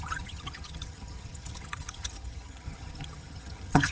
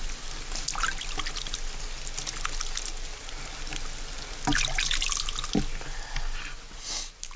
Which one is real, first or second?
second